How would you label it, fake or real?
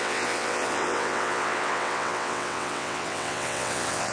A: fake